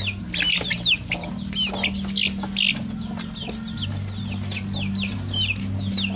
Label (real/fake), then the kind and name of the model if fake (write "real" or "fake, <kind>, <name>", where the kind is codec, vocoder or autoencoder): real